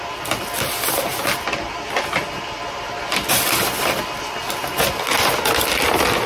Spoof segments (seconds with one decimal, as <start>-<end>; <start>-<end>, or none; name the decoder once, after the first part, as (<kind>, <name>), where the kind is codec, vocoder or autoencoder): none